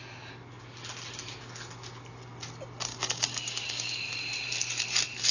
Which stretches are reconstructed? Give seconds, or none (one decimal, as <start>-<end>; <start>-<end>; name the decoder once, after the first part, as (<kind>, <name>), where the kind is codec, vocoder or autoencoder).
2.9-3.9 (codec, DAC)